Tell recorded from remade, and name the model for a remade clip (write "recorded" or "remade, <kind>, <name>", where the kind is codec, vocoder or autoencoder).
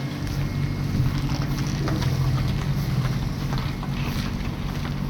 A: recorded